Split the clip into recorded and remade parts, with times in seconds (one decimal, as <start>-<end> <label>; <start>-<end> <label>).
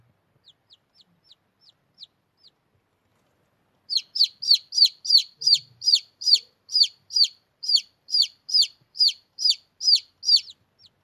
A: 0.0-5.2 recorded; 5.2-9.5 remade; 9.5-11.0 recorded